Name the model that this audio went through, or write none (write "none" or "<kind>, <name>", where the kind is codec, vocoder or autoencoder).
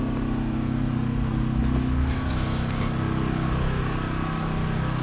none